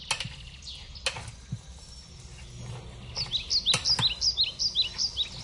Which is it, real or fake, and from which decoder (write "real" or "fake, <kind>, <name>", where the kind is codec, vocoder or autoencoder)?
real